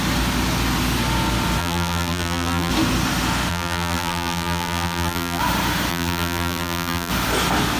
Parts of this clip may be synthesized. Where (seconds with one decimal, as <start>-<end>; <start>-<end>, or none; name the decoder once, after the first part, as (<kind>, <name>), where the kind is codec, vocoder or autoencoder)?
1.6-2.7 (vocoder, BigVGAN v2); 3.5-5.4; 5.9-7.1